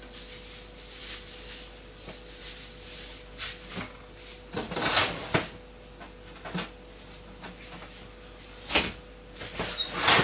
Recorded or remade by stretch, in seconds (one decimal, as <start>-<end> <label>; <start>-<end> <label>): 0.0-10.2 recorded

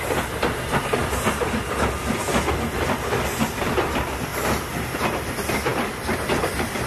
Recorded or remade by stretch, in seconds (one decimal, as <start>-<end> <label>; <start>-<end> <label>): 0.0-6.9 recorded

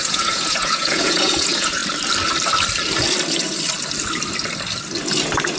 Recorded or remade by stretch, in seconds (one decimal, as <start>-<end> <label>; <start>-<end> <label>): 0.0-1.8 remade; 1.8-5.6 recorded

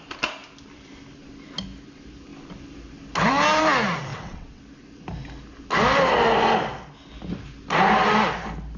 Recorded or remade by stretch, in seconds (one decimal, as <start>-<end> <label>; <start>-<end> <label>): 0.0-4.1 recorded; 4.1-4.6 remade; 4.6-8.8 recorded

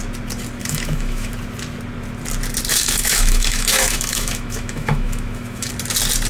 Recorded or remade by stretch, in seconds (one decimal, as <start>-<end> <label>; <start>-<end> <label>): 0.0-0.6 recorded; 0.6-1.3 remade; 1.3-2.7 recorded; 2.7-5.7 remade; 5.7-6.3 recorded

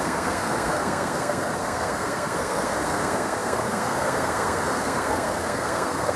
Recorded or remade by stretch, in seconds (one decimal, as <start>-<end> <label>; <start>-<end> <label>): 0.0-6.2 remade

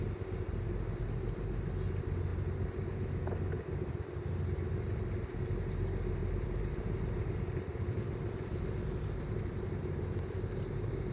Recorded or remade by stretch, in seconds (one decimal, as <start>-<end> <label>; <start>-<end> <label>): 0.0-11.1 recorded

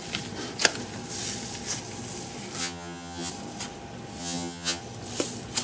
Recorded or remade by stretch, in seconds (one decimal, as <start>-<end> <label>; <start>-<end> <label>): 0.0-2.6 recorded; 2.6-3.3 remade; 3.3-4.2 recorded; 4.2-4.8 remade; 4.8-5.6 recorded